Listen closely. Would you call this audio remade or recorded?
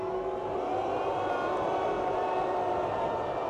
recorded